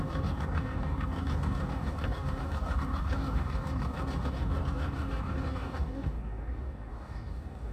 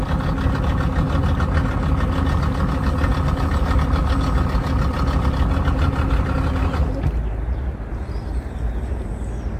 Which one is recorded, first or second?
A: second